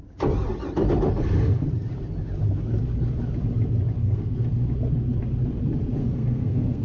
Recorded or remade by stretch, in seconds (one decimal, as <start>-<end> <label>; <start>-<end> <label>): 0.0-4.0 recorded; 4.0-4.5 remade; 4.5-6.0 recorded; 6.0-6.8 remade